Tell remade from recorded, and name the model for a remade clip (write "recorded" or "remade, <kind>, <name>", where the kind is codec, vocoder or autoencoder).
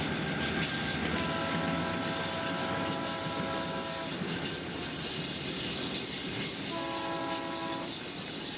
recorded